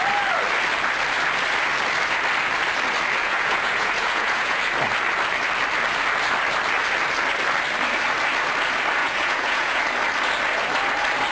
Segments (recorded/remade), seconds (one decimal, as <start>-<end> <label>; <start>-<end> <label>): 0.0-3.2 recorded; 3.2-4.6 remade; 4.6-9.0 recorded; 9.0-9.8 remade; 9.8-11.3 recorded